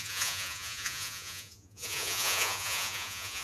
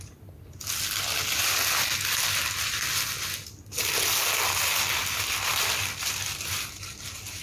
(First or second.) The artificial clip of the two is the first